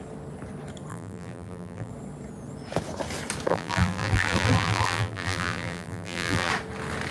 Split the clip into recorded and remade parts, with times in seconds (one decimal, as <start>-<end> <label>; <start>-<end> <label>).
0.0-0.9 recorded; 0.9-1.9 remade; 1.9-3.5 recorded; 3.5-6.5 remade; 6.5-7.1 recorded